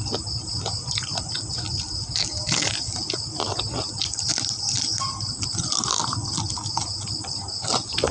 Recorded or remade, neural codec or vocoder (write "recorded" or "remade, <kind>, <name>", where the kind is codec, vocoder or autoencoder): recorded